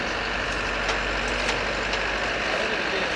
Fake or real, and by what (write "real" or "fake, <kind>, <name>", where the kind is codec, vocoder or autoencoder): real